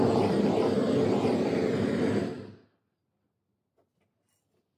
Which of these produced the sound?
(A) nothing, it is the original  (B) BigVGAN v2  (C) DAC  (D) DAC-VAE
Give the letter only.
A